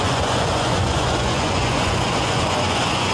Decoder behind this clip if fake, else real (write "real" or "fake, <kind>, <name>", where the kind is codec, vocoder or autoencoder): fake, vocoder, Vocos